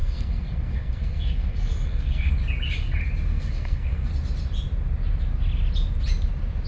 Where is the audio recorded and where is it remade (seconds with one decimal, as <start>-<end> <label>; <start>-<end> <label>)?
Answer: 0.0-2.3 remade; 2.3-3.3 recorded; 3.3-4.1 remade; 4.1-6.7 recorded